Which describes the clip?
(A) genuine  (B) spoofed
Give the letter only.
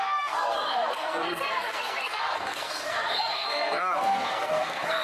B